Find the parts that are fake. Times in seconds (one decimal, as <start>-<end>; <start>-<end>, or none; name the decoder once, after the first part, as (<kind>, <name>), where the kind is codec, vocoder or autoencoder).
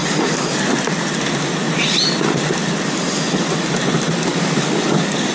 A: 4.3-5.3 (codec, DAC)